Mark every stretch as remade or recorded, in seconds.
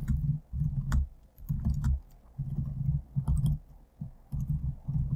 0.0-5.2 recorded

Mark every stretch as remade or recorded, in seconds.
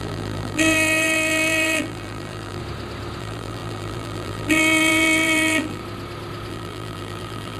0.0-2.6 remade; 2.6-3.2 recorded; 3.2-5.8 remade; 5.8-6.5 recorded; 6.5-7.6 remade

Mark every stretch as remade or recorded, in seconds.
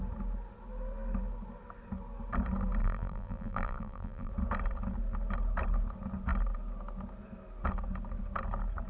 0.0-2.8 recorded; 2.8-4.3 remade; 4.3-8.9 recorded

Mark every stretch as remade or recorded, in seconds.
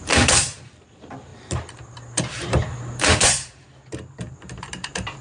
0.0-5.2 remade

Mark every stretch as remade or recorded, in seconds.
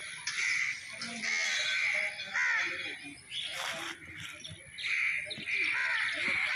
0.0-1.0 remade; 1.0-3.5 recorded; 3.5-5.0 remade; 5.0-5.8 recorded; 5.8-6.6 remade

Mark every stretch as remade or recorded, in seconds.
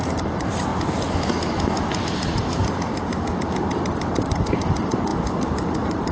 0.0-0.7 remade; 0.7-2.0 recorded; 2.0-2.6 remade; 2.6-4.1 recorded; 4.1-6.1 remade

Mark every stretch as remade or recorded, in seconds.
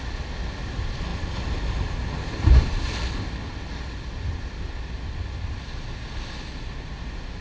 0.0-7.4 recorded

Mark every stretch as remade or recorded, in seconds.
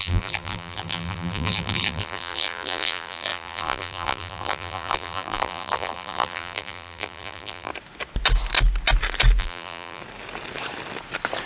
0.0-7.7 remade; 7.7-9.4 recorded; 9.4-10.0 remade; 10.0-11.5 recorded